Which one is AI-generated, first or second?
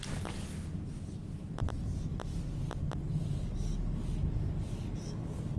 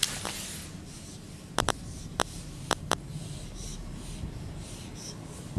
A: second